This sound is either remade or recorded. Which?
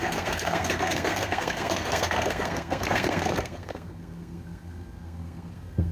remade